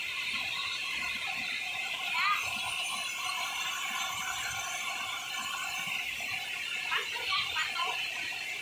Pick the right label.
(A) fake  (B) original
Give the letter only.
A